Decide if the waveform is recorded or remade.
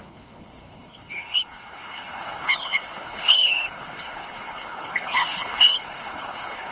remade